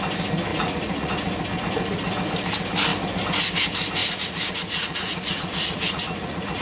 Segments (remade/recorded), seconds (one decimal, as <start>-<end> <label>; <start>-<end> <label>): 0.0-0.5 recorded; 0.5-1.1 remade; 1.1-4.0 recorded; 4.0-6.6 remade